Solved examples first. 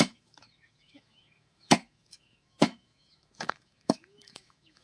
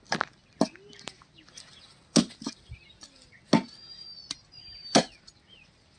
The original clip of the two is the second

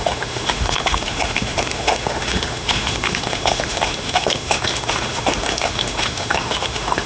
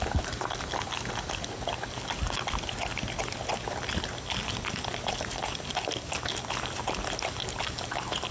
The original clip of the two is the second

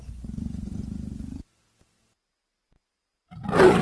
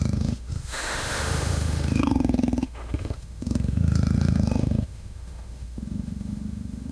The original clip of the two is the first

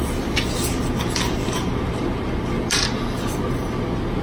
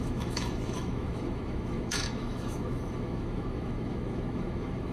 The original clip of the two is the first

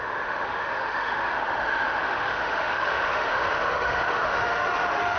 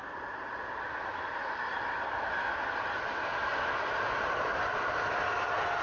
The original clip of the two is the second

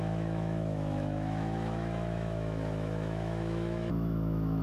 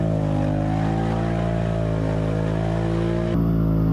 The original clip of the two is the second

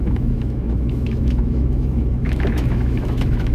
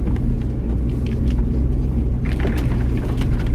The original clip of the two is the second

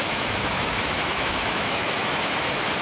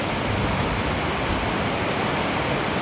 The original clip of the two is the second